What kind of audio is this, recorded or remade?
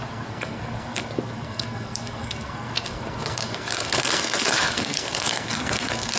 remade